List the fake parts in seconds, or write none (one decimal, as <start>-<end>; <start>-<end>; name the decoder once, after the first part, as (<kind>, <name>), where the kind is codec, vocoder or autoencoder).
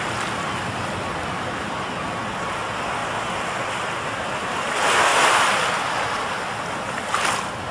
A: none